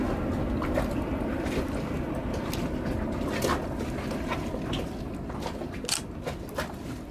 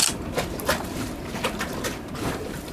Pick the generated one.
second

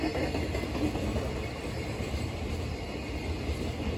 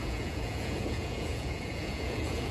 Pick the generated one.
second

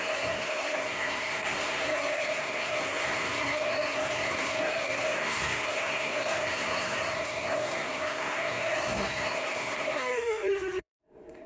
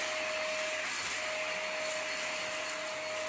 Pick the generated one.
first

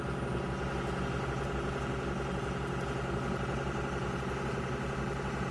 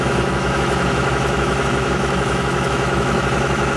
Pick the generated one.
second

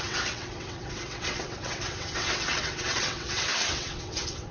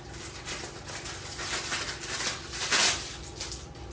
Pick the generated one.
first